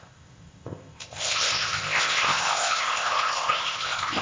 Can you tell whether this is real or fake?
fake